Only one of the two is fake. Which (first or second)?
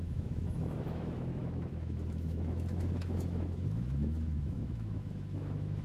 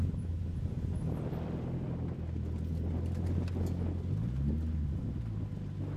first